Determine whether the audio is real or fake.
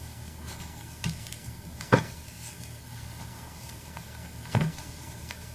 fake